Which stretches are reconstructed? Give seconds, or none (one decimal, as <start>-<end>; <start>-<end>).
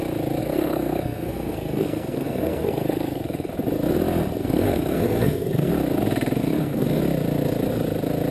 0.4-3.5; 4.4-5.7; 6.4-7.0